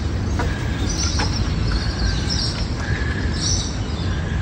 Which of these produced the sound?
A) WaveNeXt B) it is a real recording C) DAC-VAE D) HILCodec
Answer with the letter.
B